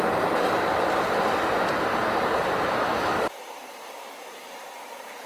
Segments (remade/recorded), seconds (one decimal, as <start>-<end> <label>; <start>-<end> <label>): 0.0-1.9 recorded; 1.9-5.3 remade